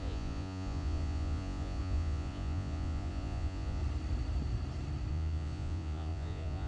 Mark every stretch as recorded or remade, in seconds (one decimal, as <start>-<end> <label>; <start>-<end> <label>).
0.0-3.8 remade; 3.8-5.1 recorded; 5.1-6.7 remade